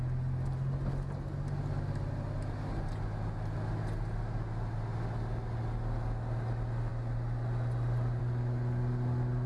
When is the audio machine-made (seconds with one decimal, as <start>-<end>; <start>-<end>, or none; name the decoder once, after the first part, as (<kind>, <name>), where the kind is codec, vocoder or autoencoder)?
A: none